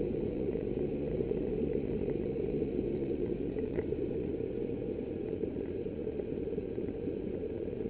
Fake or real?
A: fake